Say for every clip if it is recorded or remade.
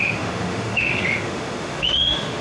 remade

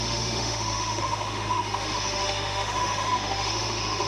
remade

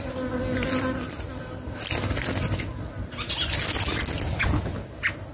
recorded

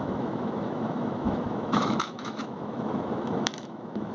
remade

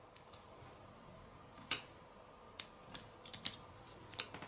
recorded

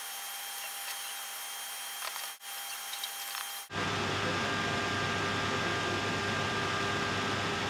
recorded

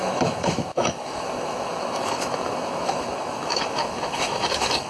remade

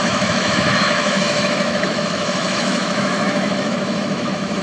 remade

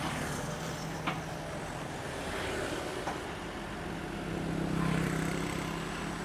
recorded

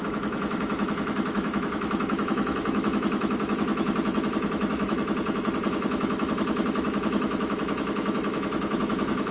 remade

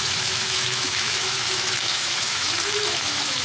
remade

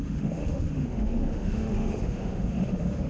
remade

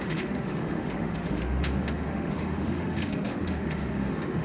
remade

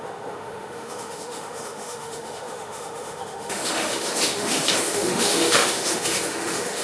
remade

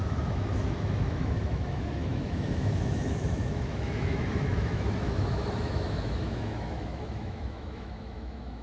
remade